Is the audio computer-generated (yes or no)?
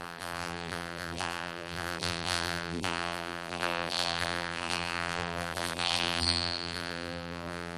yes